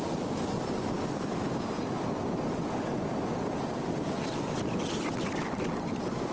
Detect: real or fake real